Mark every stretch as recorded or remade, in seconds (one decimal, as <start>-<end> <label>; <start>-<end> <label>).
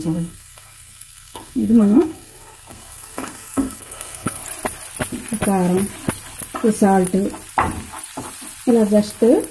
0.0-4.4 remade; 4.4-9.5 recorded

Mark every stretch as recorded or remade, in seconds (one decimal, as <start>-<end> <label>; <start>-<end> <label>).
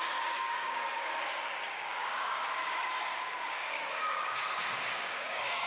0.0-5.7 remade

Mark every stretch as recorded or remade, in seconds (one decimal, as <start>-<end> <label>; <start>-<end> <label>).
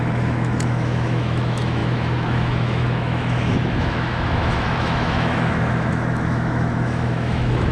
0.0-7.7 remade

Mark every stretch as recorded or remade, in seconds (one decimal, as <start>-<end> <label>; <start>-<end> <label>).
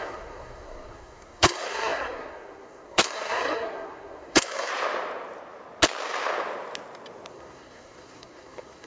0.0-4.7 remade; 4.7-7.3 recorded; 7.3-8.9 remade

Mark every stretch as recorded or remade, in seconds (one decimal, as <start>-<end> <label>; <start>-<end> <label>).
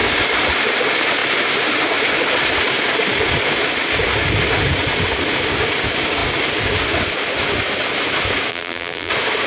0.0-8.5 recorded; 8.5-9.1 remade; 9.1-9.5 recorded